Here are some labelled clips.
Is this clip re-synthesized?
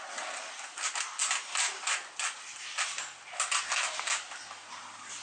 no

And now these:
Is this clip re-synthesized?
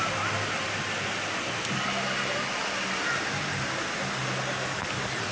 no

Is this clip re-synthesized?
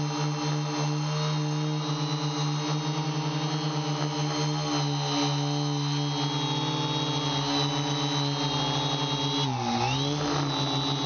no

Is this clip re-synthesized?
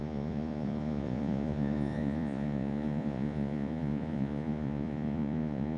yes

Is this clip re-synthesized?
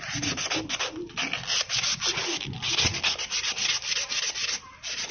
no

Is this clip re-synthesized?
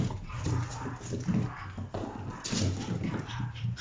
no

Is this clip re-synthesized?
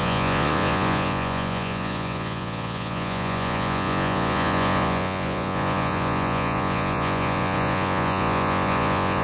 yes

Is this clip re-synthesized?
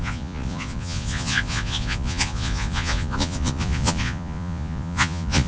yes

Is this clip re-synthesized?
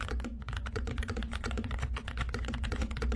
yes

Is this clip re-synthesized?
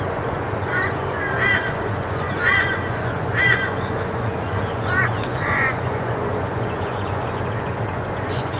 yes